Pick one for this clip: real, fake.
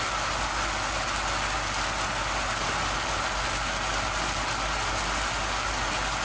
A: real